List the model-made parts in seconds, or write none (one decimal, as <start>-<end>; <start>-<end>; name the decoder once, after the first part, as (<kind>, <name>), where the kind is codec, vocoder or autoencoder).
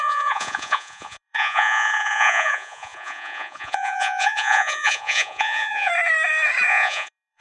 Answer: 0.0-5.9 (vocoder, Vocos); 6.7-7.4